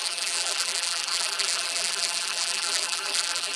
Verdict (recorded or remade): remade